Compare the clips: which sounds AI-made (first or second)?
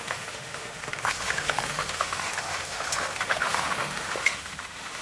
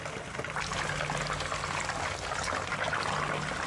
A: first